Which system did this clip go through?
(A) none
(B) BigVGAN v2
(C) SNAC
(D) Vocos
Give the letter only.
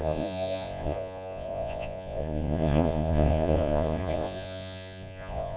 D